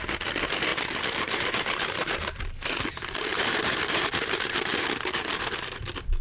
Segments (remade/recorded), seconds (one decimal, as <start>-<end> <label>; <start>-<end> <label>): 0.0-0.7 recorded; 0.7-2.9 remade; 2.9-3.3 recorded; 3.3-5.5 remade; 5.5-6.2 recorded